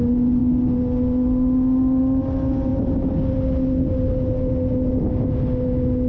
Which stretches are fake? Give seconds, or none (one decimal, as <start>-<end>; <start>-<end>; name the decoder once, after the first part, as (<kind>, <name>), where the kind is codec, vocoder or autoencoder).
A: none